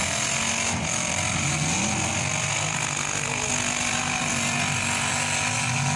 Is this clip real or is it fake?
real